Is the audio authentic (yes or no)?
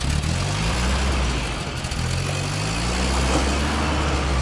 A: yes